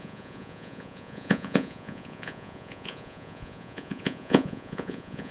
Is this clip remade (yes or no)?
yes